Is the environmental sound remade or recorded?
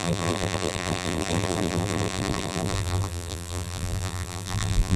remade